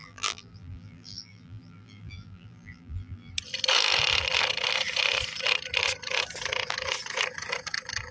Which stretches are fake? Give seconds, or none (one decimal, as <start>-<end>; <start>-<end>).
0.0-3.3